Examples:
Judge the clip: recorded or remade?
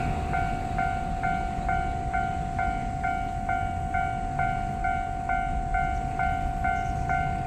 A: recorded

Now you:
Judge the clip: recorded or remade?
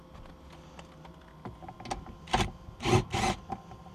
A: recorded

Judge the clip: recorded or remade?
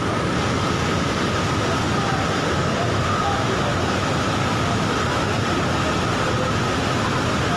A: recorded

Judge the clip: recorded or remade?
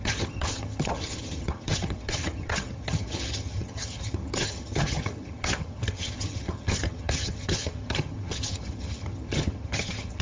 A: remade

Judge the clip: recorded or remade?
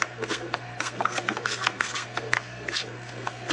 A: remade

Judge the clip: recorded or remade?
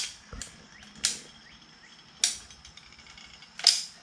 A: recorded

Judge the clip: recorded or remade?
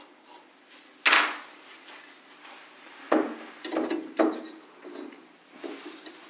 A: recorded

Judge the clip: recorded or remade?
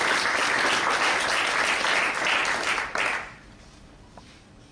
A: recorded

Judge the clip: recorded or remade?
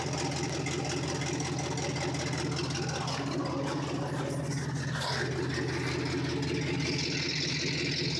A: recorded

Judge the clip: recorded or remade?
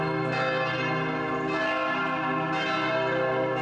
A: recorded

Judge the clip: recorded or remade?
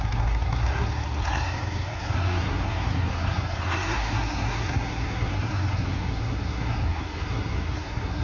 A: remade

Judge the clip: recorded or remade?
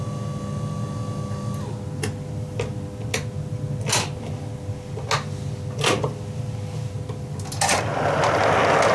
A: recorded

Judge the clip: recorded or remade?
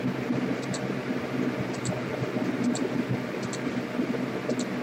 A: recorded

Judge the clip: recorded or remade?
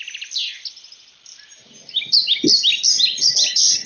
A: recorded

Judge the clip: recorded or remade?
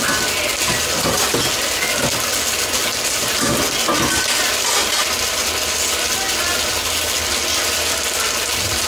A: recorded